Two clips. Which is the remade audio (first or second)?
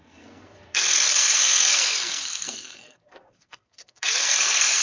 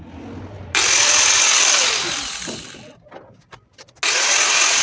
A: first